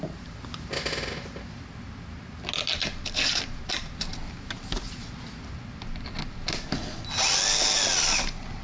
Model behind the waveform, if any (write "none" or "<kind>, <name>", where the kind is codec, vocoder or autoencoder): none